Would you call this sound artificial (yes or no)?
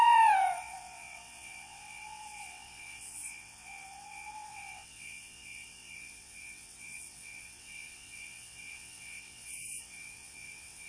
yes